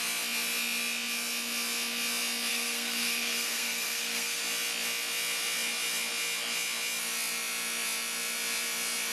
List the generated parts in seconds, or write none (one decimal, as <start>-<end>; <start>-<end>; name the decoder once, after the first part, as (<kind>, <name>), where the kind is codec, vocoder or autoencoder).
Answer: 2.5-4.4 (codec, SNAC)